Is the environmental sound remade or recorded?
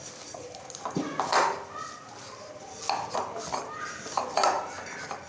recorded